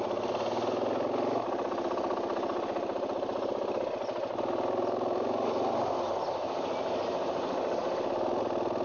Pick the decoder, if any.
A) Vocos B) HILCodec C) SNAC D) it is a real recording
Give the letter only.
D